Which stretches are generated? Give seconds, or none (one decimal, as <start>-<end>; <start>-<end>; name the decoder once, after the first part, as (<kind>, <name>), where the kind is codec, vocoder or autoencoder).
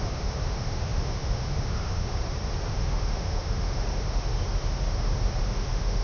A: 0.0-2.1 (autoencoder, DAC-VAE); 2.7-4.3; 5.4-6.0